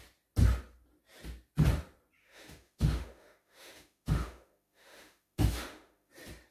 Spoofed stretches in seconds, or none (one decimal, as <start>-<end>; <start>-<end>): 2.2-6.1